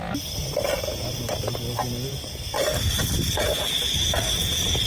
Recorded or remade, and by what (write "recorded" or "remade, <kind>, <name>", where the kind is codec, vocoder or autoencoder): recorded